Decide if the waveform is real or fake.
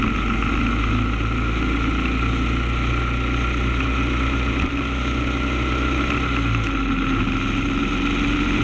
real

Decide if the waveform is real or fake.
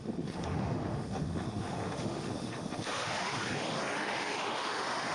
fake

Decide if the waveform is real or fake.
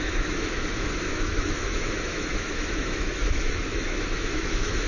fake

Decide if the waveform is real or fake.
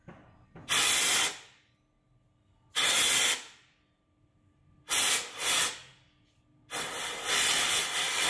real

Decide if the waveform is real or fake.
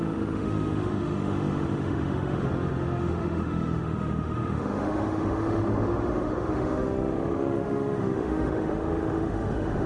fake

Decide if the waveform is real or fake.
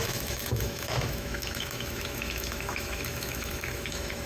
fake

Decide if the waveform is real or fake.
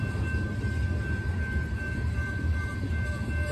real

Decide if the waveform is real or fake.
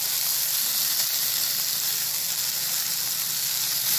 real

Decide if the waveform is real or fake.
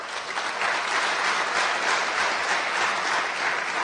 real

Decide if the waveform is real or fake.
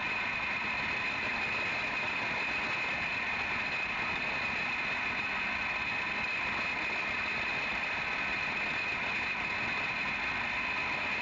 real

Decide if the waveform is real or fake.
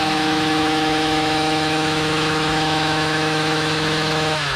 fake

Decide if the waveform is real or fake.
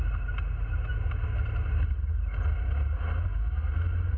real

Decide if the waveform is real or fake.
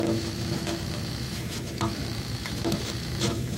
fake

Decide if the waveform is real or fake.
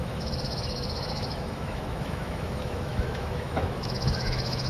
fake